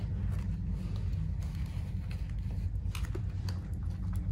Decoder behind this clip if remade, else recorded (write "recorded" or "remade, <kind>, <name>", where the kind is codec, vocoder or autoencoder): recorded